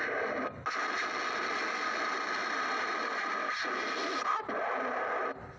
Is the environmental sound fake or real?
real